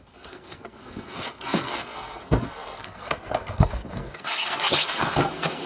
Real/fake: fake